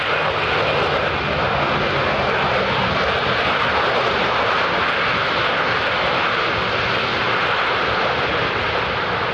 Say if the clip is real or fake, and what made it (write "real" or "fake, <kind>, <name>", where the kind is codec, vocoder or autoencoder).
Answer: real